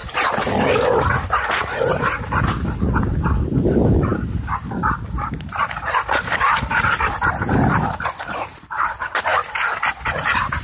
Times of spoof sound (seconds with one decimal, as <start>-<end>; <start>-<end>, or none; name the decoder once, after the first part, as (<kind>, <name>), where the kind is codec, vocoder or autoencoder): 0.0-1.5 (vocoder, BigVGAN v2)